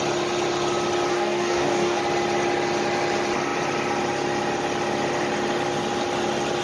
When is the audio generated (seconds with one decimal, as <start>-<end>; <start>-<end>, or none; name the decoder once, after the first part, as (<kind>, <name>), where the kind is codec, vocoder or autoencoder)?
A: 1.1-2.0 (codec, DAC)